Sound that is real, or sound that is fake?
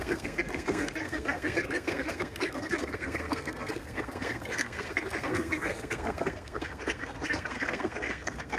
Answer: fake